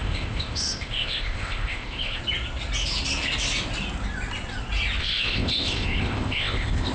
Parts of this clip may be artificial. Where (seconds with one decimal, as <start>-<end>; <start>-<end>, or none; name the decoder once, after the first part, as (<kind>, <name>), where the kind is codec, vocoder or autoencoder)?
0.0-2.2 (codec, ZipCodec); 5.0-6.9